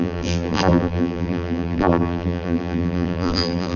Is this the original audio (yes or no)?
no